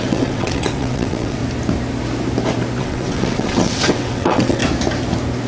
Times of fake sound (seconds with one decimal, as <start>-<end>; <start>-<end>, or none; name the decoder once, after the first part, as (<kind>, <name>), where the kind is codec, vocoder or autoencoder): 0.0-1.4 (vocoder, WaveNeXt); 2.8-4.6